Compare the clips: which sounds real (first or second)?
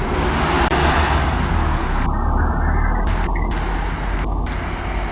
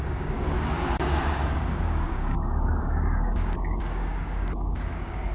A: first